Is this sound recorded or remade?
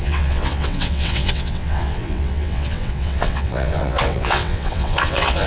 remade